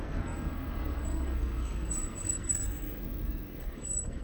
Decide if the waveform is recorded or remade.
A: remade